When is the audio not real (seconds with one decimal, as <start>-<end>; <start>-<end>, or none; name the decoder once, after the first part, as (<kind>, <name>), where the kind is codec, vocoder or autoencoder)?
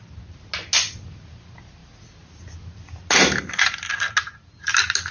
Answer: none